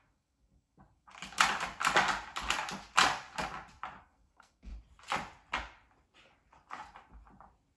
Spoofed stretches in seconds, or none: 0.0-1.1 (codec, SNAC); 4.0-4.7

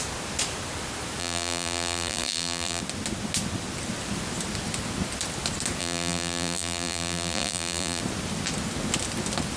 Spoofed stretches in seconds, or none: 1.2-2.8 (vocoder, BigVGAN v2); 5.8-8.0